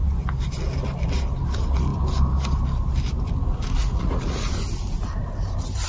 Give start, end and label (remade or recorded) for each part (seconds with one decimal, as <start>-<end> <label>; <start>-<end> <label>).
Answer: 0.0-3.8 recorded; 3.8-4.5 remade; 4.5-5.9 recorded